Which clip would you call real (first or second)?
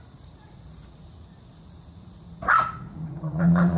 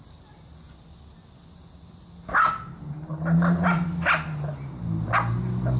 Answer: second